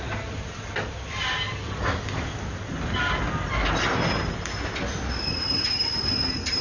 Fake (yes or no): no